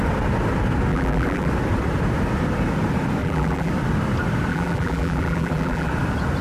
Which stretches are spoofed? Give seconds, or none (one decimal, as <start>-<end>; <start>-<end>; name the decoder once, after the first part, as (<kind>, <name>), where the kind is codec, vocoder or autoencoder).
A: 0.9-1.5 (vocoder, BigVGAN v2); 3.2-3.7; 4.5-5.9